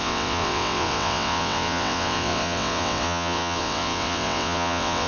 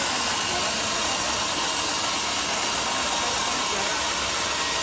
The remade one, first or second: first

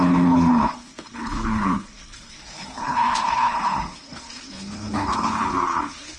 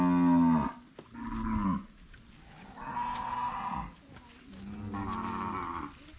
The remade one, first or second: first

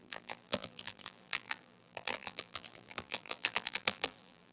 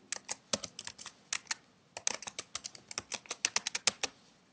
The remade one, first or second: first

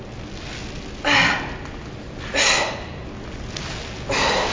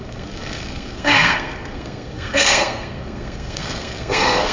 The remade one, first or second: second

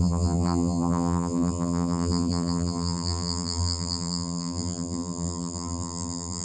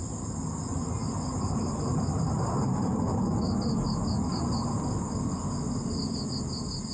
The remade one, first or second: first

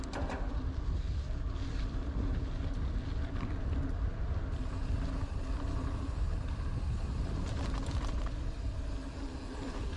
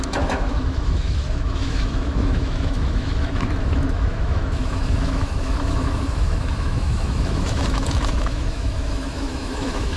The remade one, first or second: second